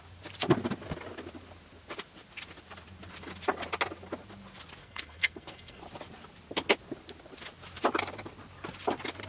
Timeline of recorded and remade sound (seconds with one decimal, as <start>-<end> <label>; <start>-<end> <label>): 0.0-4.8 recorded; 4.8-5.8 remade; 5.8-9.3 recorded